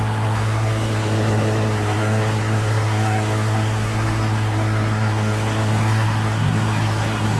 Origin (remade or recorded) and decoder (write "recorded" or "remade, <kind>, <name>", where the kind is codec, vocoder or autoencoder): remade, codec, SNAC